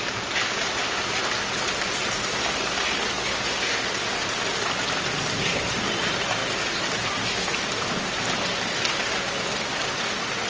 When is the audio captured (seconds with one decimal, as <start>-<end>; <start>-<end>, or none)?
0.0-10.5